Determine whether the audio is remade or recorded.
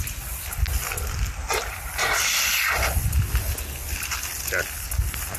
recorded